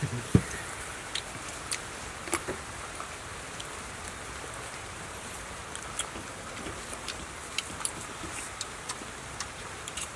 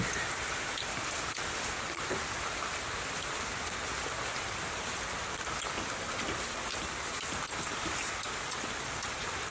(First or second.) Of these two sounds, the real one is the second